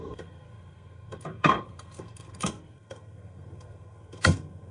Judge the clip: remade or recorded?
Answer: remade